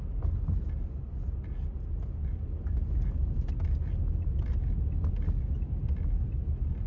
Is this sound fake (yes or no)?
no